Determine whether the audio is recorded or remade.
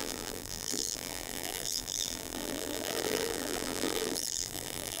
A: remade